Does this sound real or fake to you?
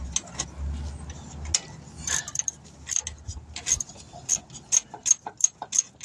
real